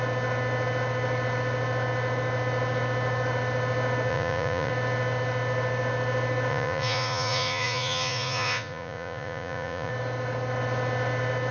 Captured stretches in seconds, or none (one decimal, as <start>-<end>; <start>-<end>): 0.0-4.1; 4.7-6.5; 9.9-11.5